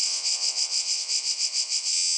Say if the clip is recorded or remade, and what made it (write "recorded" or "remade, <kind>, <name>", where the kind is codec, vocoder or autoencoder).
remade, vocoder, WaveNeXt